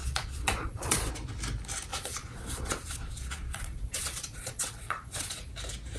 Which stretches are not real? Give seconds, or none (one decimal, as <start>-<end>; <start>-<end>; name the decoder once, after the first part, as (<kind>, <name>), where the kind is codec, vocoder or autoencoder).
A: 0.0-1.1 (vocoder, Vocos); 1.9-5.5